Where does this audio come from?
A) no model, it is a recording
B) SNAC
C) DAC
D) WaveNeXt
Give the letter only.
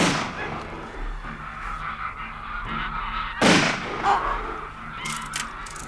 A